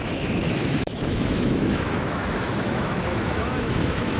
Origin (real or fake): fake